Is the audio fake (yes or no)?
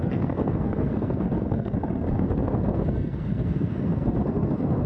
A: yes